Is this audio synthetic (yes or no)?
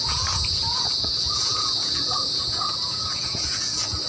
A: yes